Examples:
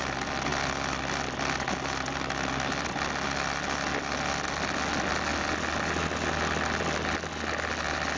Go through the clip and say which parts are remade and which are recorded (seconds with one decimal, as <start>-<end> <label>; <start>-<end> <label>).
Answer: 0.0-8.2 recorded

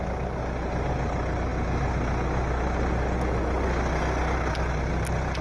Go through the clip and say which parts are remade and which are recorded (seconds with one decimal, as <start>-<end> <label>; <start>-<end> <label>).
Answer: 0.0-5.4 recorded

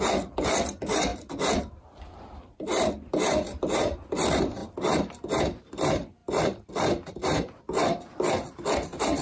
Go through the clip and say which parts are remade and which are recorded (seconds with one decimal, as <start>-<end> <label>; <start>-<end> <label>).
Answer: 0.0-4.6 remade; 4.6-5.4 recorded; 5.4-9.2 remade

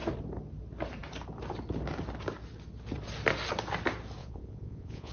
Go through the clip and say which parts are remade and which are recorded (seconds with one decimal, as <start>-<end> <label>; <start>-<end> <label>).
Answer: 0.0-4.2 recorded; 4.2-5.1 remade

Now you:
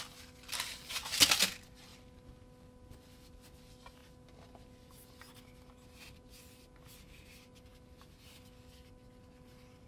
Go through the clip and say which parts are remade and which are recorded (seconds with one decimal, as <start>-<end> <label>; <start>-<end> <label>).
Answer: 0.0-9.9 recorded

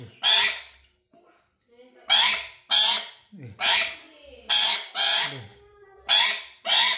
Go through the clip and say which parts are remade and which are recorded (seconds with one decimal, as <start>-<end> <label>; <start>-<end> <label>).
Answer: 0.0-5.5 recorded; 5.5-6.1 remade; 6.1-7.0 recorded

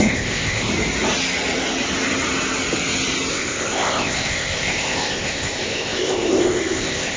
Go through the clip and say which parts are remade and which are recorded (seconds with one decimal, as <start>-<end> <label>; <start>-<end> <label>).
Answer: 0.0-0.7 remade; 0.7-3.3 recorded; 3.3-7.2 remade